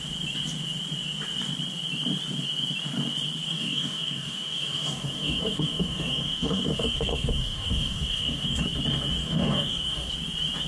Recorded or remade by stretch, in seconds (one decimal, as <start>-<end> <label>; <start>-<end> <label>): 0.0-3.5 recorded; 3.5-8.6 remade; 8.6-9.2 recorded; 9.2-10.1 remade; 10.1-10.7 recorded